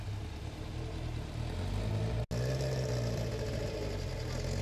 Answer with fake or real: real